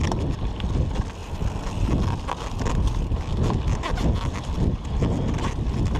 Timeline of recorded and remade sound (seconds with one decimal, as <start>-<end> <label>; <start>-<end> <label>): 0.0-6.0 recorded